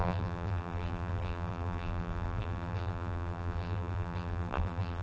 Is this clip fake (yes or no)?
yes